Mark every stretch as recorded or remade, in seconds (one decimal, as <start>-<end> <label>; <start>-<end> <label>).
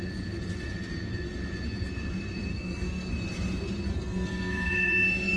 0.0-2.5 recorded; 2.5-3.1 remade; 3.1-3.9 recorded; 3.9-5.4 remade